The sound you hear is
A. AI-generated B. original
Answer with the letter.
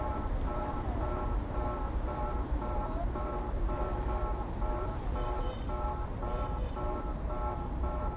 A